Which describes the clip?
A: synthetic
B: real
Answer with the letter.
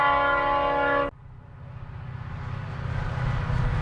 B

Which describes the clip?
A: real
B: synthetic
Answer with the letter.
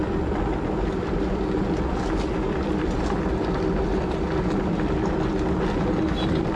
A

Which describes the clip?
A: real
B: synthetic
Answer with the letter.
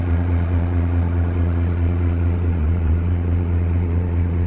B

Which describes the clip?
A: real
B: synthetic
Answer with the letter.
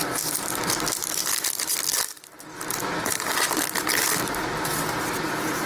A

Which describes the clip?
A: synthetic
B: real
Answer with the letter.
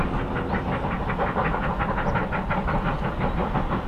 B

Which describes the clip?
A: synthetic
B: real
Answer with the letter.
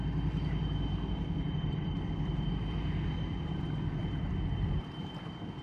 B